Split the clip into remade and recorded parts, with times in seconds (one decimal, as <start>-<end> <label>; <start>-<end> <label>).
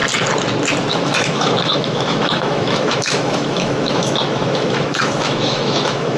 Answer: 0.0-0.9 recorded; 0.9-6.2 remade